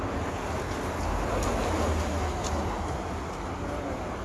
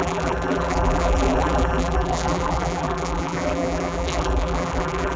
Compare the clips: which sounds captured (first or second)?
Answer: first